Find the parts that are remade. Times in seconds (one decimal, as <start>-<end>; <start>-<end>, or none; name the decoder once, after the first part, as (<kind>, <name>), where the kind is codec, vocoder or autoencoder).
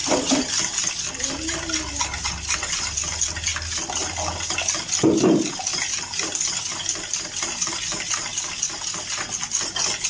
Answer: 0.0-0.9 (vocoder, BigVGAN v2); 8.3-9.5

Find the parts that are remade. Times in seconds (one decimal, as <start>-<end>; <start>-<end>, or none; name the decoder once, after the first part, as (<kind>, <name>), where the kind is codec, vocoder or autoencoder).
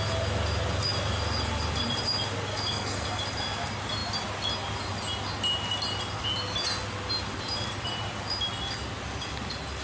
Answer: 2.5-3.2 (codec, SNAC)